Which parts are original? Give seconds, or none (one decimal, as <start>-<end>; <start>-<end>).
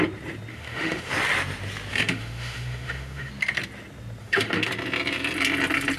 0.0-0.5; 1.1-1.9; 3.3-4.2; 4.7-6.0